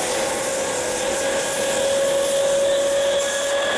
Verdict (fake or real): real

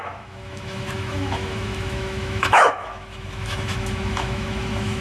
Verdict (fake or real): fake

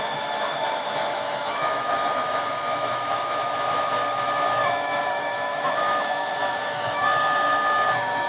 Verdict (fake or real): fake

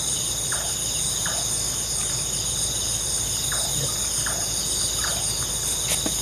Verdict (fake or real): real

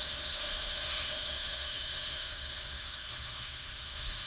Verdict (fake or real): fake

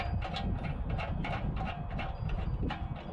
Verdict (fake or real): real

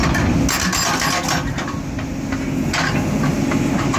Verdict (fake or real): real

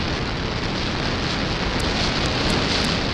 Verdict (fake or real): real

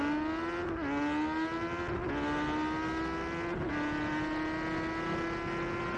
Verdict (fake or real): real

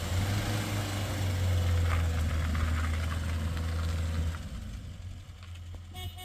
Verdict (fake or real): real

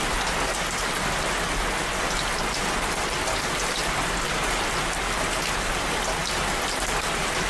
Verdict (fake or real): real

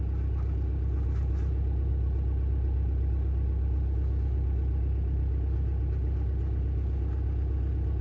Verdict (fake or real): real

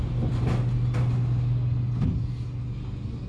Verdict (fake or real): real